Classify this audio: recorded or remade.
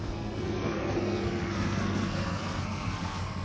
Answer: remade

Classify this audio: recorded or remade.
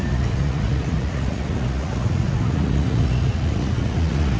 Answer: remade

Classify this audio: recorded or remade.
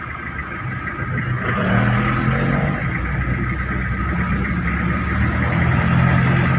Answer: recorded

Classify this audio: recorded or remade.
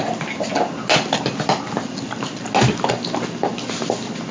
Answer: recorded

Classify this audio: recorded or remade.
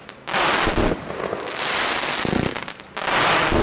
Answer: recorded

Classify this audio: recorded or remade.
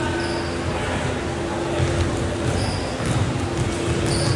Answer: recorded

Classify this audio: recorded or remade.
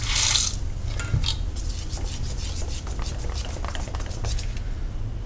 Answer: recorded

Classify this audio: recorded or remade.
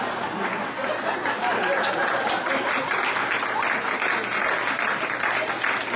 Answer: recorded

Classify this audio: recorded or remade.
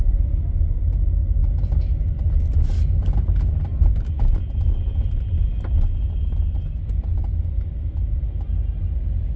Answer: recorded